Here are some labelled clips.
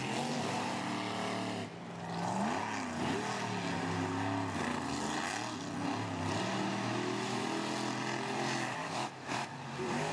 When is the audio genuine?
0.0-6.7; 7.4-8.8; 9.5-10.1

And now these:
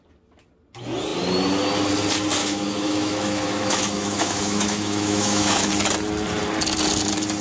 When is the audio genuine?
0.0-2.4; 5.7-7.4

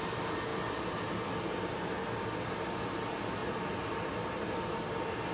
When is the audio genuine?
0.0-5.3